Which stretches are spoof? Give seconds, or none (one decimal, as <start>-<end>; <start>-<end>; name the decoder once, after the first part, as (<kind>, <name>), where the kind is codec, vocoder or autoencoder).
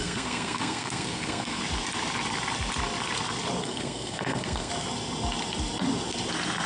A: 0.0-1.6 (codec, SNAC); 3.6-4.7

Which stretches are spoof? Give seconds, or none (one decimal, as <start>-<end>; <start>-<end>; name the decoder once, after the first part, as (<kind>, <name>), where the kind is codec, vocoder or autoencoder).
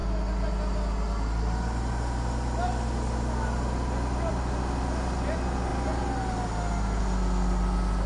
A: none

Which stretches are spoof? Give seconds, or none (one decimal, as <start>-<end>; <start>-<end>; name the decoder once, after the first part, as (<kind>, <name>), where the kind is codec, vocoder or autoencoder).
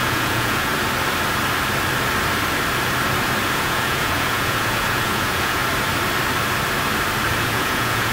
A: 0.0-0.7 (vocoder, Vocos); 3.5-5.6; 7.4-8.1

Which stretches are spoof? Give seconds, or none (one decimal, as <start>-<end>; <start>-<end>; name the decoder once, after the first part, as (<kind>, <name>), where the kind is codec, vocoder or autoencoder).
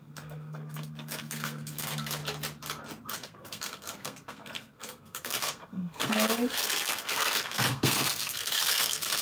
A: 0.0-2.2 (codec, SNAC); 3.1-9.2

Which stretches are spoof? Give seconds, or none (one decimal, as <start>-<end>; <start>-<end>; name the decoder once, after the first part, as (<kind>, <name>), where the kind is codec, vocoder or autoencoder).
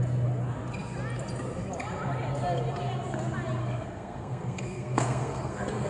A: 3.6-5.9 (codec, SNAC)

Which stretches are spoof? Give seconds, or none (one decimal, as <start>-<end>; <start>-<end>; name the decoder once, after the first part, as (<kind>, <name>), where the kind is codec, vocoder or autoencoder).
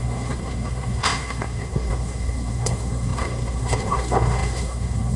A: 0.0-5.2 (codec, SNAC)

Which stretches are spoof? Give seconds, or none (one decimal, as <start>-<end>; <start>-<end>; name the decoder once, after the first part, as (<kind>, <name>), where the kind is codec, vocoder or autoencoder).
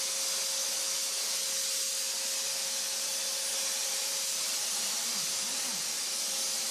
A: 3.8-6.1 (vocoder, BigVGAN v2)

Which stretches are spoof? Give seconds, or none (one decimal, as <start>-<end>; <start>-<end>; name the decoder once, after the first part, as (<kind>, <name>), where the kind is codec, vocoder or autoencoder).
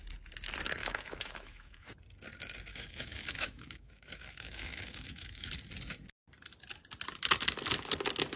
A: 0.8-1.9 (autoencoder, DAC-VAE); 2.7-5.5